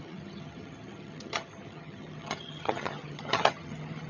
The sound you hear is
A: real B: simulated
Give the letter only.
B